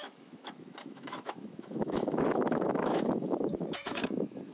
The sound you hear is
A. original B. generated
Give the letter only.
B